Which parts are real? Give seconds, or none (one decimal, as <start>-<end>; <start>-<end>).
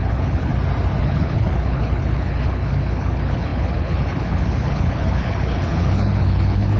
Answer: 0.5-1.0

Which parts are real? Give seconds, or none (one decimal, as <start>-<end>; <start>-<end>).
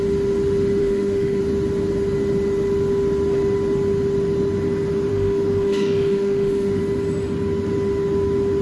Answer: 0.0-0.8; 1.4-5.1; 6.8-8.6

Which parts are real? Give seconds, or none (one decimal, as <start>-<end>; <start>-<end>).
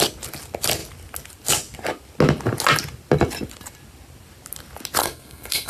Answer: 0.0-5.0